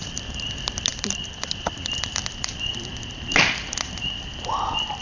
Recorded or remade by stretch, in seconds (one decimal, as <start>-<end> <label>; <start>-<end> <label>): 0.0-5.0 remade